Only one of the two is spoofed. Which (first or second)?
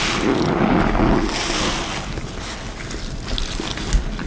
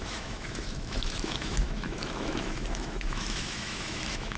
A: second